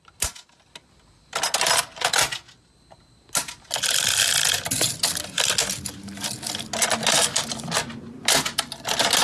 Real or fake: real